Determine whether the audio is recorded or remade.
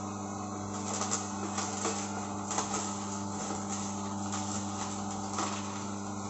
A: recorded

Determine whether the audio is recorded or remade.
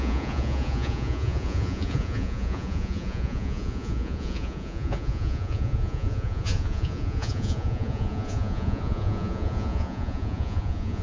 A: remade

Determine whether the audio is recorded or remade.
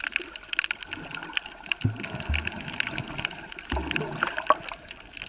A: recorded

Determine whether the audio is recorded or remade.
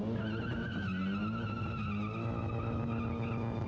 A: recorded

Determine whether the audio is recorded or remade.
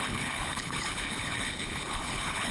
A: remade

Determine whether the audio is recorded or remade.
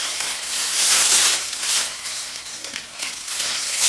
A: remade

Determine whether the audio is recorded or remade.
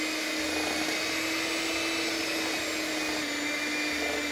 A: recorded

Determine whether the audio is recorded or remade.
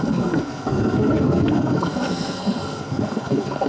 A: remade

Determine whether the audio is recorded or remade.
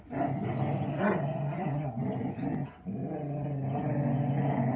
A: recorded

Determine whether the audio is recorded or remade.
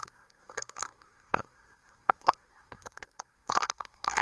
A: remade